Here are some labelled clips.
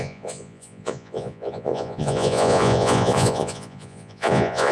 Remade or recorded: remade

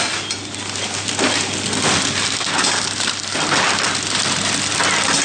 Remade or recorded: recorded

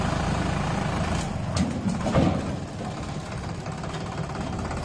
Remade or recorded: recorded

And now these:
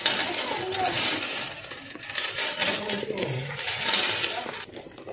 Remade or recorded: recorded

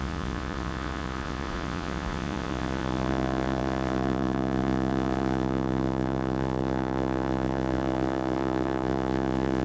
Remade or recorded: remade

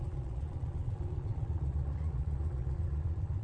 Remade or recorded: remade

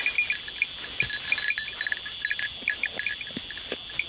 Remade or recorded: recorded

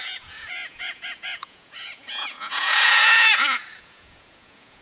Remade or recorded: remade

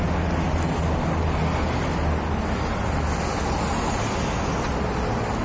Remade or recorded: recorded